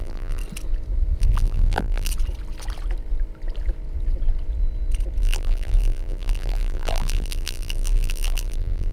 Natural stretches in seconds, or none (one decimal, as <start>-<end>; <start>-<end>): 0.4-1.2; 2.1-5.2